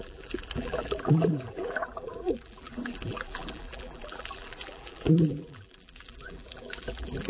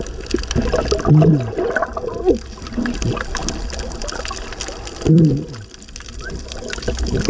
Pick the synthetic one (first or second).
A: first